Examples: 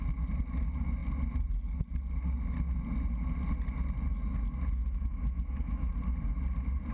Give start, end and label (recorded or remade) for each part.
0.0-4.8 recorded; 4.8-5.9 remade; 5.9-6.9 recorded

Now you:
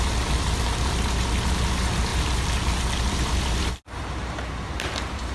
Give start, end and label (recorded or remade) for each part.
0.0-5.3 recorded

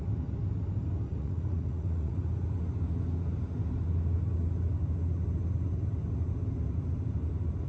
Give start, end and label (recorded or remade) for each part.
0.0-1.1 recorded; 1.1-2.2 remade; 2.2-7.7 recorded

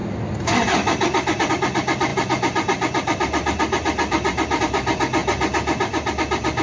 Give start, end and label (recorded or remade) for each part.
0.0-1.5 recorded; 1.5-5.2 remade; 5.2-6.1 recorded; 6.1-6.6 remade

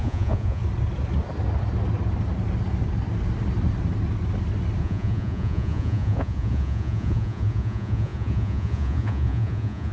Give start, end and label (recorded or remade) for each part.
0.0-0.6 remade; 0.6-4.8 recorded; 4.8-9.9 remade

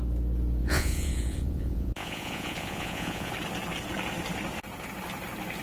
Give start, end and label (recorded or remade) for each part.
0.0-0.6 recorded; 0.6-3.3 remade; 3.3-5.6 recorded